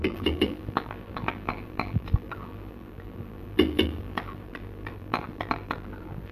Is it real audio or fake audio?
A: fake